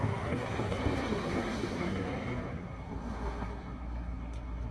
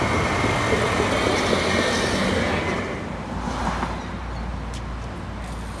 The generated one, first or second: first